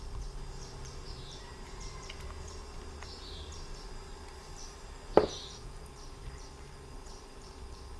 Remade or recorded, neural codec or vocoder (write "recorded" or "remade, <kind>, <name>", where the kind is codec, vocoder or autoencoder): remade, vocoder, BigVGAN v2